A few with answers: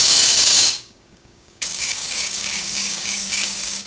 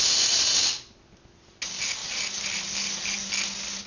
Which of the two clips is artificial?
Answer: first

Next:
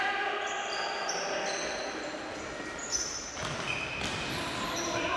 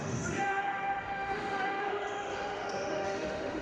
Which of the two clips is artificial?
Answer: second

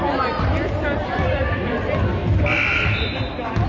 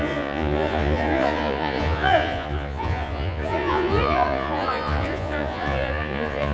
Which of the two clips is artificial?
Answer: second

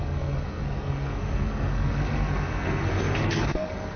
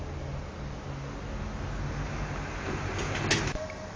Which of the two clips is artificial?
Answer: first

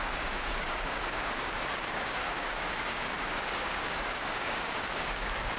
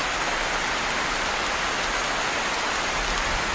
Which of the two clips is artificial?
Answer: first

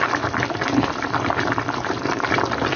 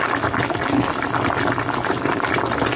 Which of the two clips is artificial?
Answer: first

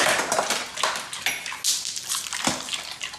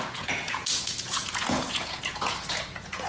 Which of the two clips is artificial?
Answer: second